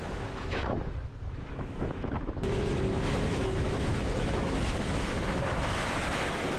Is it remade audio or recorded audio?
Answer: remade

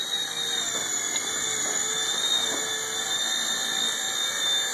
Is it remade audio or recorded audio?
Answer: recorded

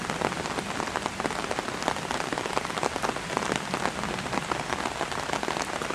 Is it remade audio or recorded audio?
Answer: recorded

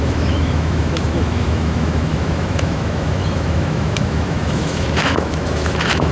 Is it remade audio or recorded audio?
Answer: remade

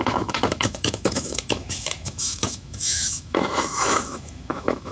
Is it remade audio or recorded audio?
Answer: remade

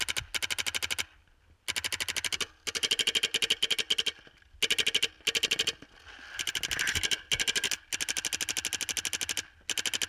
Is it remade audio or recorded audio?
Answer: recorded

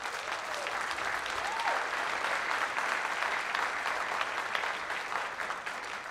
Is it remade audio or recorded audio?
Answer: recorded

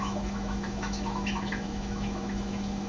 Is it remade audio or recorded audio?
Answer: remade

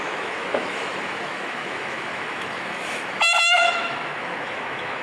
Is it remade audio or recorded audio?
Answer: remade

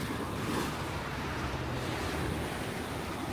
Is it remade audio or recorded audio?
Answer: recorded